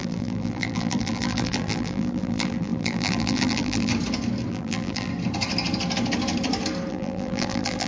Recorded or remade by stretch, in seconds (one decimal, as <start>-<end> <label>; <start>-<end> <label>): 0.0-3.9 remade; 3.9-4.5 recorded; 4.5-5.1 remade; 5.1-6.9 recorded; 6.9-7.9 remade